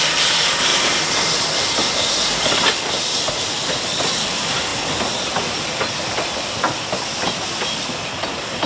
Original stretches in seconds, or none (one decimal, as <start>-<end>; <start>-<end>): 0.7-1.9; 4.7-7.2